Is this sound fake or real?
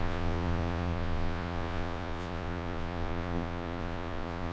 fake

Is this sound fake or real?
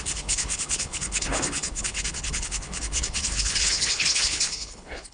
fake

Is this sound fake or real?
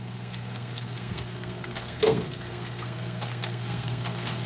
fake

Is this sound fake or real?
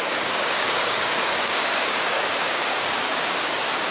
fake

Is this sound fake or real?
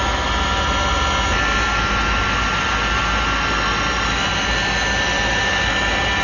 real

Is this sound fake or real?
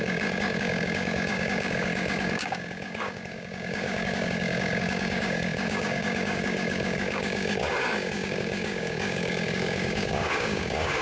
fake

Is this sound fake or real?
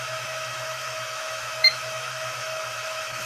fake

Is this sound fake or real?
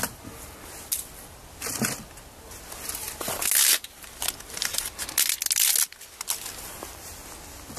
real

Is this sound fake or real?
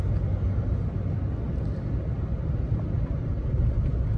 real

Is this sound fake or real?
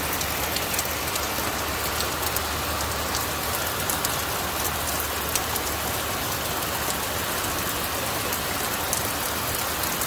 real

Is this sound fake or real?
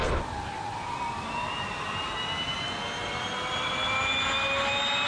real